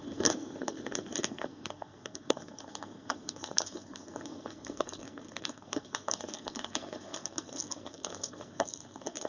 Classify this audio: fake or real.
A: fake